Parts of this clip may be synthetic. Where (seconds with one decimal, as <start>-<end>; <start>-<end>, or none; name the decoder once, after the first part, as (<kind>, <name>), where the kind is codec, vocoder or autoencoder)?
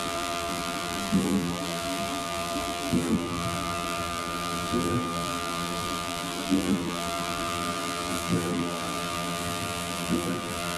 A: 0.0-10.8 (vocoder, BigVGAN v2)